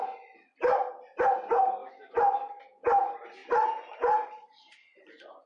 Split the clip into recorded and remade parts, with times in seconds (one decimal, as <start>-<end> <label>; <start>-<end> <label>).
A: 0.0-1.8 recorded; 1.8-2.6 remade; 2.6-5.5 recorded